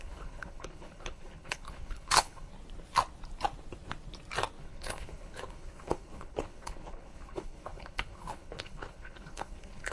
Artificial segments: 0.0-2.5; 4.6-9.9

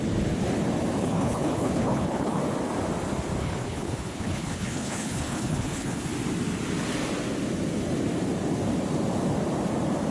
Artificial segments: 1.0-2.4; 3.4-6.0